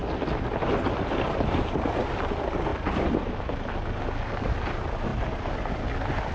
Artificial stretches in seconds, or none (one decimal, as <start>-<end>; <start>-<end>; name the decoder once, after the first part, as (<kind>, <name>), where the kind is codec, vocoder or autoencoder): none